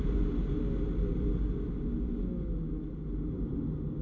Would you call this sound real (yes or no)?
yes